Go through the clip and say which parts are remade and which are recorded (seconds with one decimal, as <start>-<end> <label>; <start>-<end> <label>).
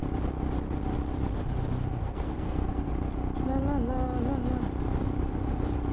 0.0-2.0 recorded; 2.0-2.9 remade; 2.9-5.9 recorded